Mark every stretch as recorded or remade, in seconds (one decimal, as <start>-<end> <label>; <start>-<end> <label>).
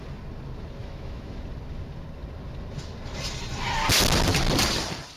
0.0-0.8 recorded; 0.8-1.3 remade; 1.3-5.2 recorded